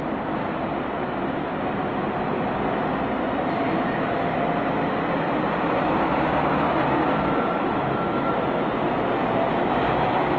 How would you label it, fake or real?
real